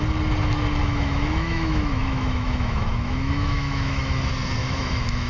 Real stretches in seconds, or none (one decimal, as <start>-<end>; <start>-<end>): 0.0-0.8; 4.0-4.6